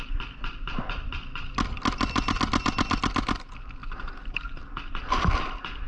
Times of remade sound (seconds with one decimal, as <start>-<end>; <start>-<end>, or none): none